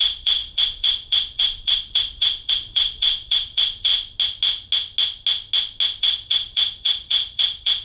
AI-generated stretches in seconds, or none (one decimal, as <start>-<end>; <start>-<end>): 0.0-3.9; 6.0-7.8